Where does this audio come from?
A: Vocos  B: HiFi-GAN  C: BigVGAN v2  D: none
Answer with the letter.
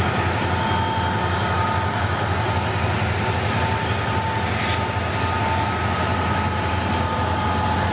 D